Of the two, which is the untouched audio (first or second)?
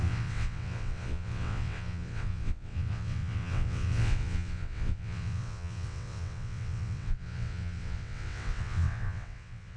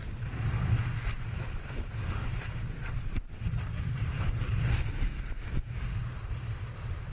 second